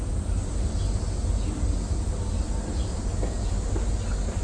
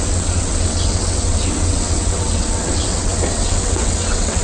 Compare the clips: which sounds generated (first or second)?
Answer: second